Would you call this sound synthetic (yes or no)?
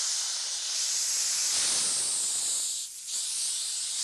no